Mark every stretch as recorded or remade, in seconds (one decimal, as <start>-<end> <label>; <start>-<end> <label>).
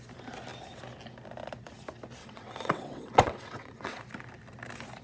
0.0-2.2 recorded; 2.2-4.0 remade; 4.0-5.0 recorded